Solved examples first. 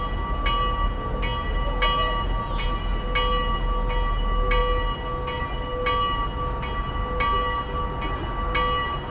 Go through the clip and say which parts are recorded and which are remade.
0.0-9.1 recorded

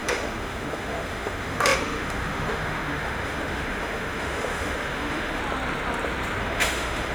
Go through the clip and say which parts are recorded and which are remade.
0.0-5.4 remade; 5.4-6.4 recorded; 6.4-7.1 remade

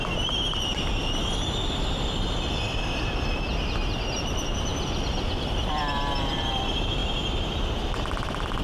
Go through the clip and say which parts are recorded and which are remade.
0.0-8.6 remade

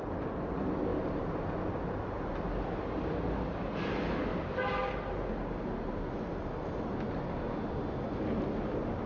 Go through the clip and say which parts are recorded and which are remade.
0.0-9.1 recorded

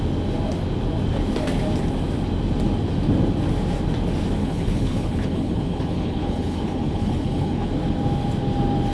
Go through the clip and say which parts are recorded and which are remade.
0.0-4.4 recorded; 4.4-7.7 remade; 7.7-8.9 recorded

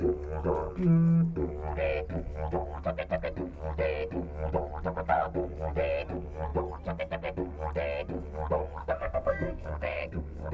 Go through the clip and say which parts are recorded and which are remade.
0.0-8.8 recorded; 8.8-10.5 remade

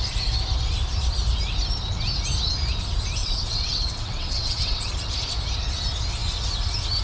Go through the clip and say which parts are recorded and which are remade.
0.0-3.2 recorded; 3.2-4.9 remade; 4.9-7.0 recorded